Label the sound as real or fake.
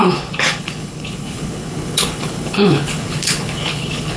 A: fake